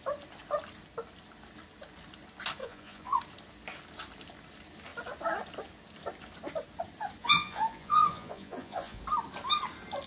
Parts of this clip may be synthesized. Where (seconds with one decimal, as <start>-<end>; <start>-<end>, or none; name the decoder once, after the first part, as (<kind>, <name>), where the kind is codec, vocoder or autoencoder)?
2.6-3.2 (vocoder, Vocos); 7.2-9.0